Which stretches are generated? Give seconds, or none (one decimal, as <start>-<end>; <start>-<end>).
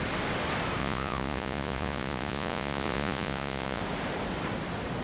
0.8-3.8